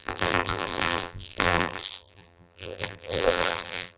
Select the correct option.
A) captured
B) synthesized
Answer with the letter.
B